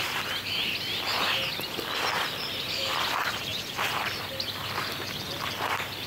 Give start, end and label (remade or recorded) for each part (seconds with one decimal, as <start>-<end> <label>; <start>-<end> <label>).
0.0-6.1 recorded